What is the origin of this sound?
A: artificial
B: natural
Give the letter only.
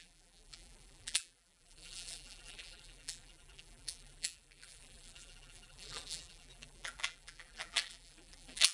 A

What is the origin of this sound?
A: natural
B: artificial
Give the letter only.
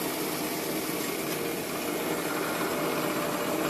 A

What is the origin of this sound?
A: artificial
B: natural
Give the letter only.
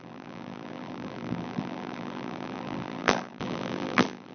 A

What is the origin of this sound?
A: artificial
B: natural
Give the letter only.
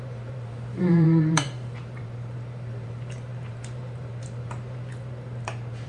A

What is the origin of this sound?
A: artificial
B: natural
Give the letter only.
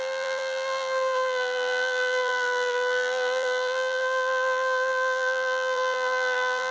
A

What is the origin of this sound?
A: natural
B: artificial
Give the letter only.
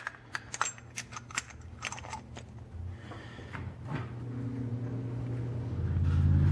A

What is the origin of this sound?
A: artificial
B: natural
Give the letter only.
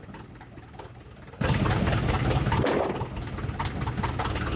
B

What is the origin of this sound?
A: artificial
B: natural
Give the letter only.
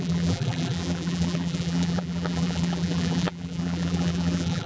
A